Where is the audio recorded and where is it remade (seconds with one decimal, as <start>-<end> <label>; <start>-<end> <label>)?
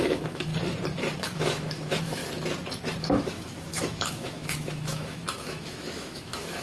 0.0-0.5 remade; 0.5-1.2 recorded; 1.2-2.2 remade; 2.2-3.0 recorded; 3.0-6.6 remade